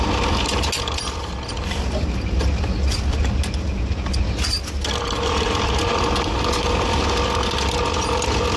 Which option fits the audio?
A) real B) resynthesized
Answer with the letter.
A